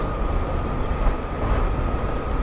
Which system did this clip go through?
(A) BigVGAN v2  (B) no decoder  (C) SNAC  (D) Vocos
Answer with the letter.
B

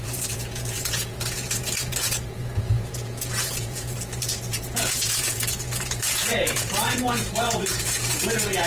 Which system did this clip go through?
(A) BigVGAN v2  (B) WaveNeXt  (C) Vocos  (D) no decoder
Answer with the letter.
C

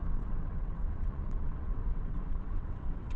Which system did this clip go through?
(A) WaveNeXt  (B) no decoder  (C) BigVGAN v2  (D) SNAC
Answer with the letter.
A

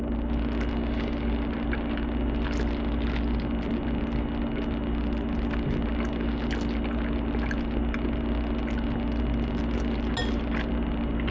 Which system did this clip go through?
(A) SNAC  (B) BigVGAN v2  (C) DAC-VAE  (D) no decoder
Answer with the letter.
D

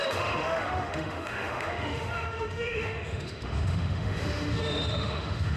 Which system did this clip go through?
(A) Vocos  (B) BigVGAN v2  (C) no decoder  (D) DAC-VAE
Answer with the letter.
D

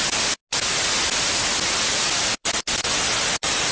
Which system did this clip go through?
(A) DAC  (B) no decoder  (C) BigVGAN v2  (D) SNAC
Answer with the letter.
B